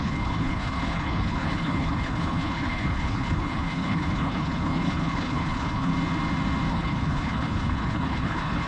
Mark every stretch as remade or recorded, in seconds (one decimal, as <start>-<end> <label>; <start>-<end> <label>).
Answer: 0.0-5.9 remade; 5.9-6.7 recorded; 6.7-8.7 remade